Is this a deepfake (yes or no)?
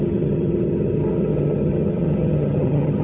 yes